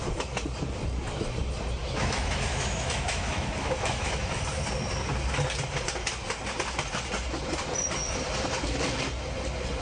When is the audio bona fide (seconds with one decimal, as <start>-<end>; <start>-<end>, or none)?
0.0-1.8; 4.4-9.8